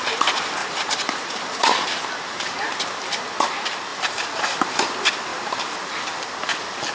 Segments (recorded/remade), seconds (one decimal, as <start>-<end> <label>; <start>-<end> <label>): 0.0-0.6 recorded; 0.6-3.4 remade; 3.4-3.9 recorded; 3.9-4.8 remade; 4.8-6.9 recorded